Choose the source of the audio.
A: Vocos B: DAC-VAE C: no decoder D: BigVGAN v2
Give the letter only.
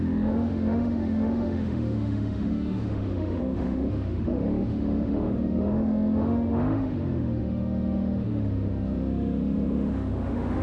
B